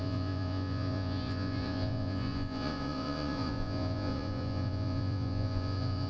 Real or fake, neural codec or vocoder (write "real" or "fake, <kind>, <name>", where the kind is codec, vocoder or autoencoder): fake, vocoder, Vocos